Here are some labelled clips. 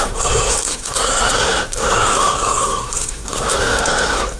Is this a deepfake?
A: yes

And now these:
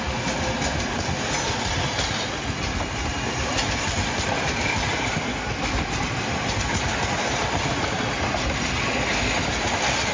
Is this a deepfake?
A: no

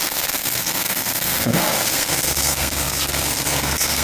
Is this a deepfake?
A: yes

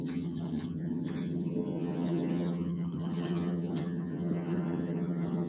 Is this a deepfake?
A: yes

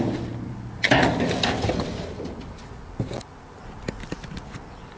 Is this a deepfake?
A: no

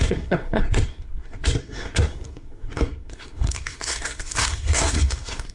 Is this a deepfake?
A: yes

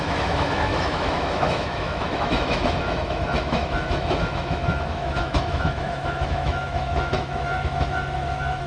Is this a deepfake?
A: yes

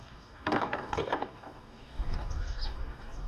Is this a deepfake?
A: yes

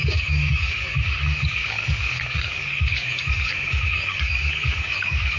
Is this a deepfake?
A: yes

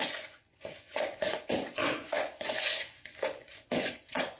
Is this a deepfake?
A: yes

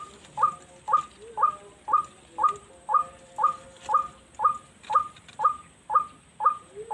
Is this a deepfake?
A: no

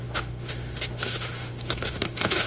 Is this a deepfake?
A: yes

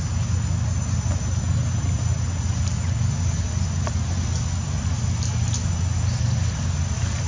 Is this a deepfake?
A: no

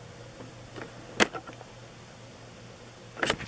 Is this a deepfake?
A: no